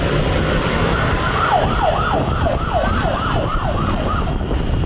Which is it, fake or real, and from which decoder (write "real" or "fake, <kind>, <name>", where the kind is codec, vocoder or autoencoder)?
real